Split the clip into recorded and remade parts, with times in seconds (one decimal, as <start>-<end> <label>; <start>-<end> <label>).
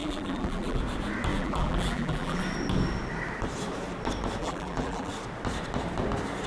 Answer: 0.0-0.8 remade; 0.8-1.3 recorded; 1.3-2.4 remade; 2.4-4.4 recorded; 4.4-5.1 remade; 5.1-6.5 recorded